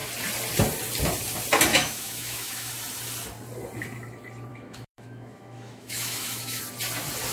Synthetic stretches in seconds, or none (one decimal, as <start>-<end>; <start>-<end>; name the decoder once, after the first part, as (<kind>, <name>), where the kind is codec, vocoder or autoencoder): 1.7-2.7 (autoencoder, DAC-VAE); 4.5-6.6